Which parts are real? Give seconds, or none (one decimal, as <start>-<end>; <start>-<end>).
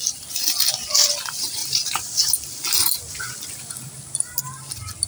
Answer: 0.0-5.1